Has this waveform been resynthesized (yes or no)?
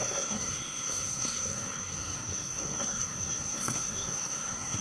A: yes